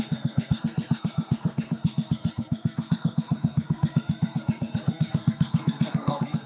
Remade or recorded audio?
remade